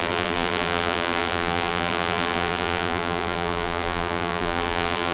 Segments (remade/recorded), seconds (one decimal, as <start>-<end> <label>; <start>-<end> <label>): 0.0-5.1 remade